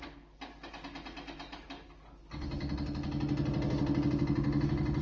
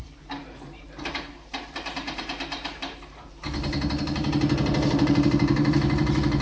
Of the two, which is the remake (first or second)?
second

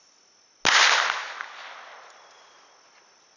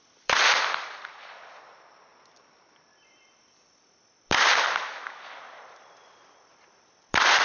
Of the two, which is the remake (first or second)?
second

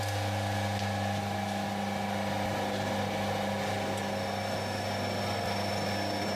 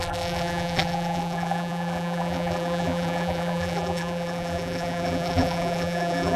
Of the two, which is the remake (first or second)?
second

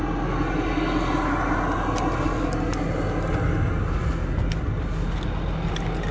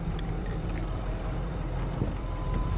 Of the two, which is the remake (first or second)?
second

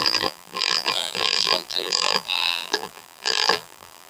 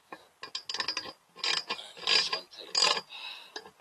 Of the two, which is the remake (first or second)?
first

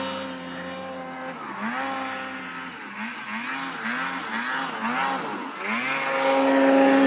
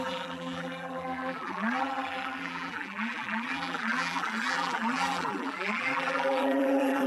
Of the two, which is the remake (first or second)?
second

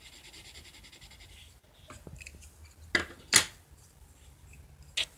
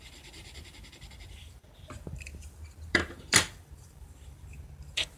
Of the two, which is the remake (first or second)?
second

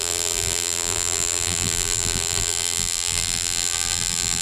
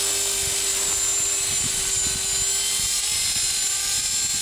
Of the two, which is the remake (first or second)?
first